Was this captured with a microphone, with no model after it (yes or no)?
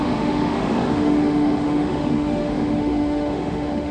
no